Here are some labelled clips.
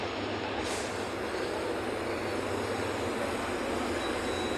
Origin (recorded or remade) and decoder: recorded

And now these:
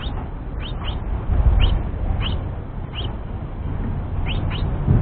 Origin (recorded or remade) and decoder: recorded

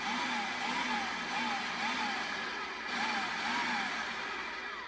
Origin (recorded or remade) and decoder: recorded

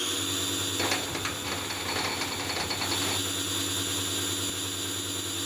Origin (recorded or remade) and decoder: recorded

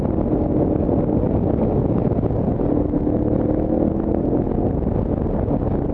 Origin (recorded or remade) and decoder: recorded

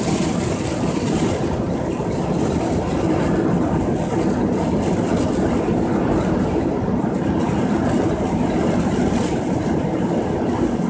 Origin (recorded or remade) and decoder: recorded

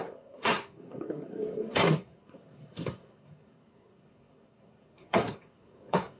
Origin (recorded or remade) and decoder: remade, codec, SNAC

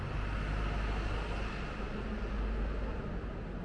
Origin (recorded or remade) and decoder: recorded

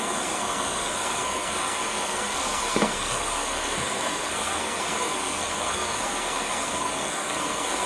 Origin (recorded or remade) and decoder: remade, codec, SNAC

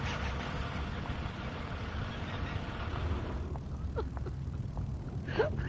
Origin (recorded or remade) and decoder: recorded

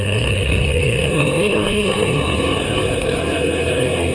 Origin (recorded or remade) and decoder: remade, codec, SNAC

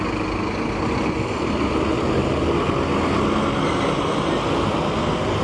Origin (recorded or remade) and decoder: recorded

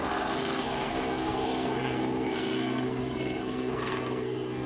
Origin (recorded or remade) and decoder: remade, codec, SNAC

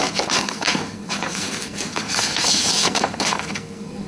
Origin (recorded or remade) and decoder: remade, codec, SNAC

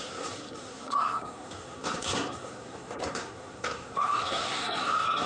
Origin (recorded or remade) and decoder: remade, codec, SNAC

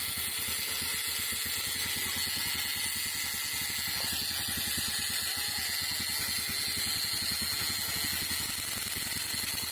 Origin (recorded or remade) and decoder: recorded